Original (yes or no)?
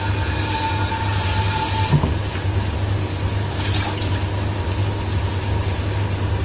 yes